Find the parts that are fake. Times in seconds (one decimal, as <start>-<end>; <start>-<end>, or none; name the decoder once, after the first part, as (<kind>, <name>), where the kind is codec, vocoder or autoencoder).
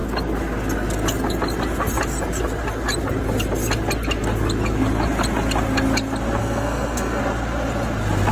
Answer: 6.4-7.2 (codec, SNAC)